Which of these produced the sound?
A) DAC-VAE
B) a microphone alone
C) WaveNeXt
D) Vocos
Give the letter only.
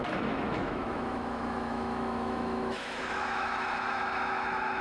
A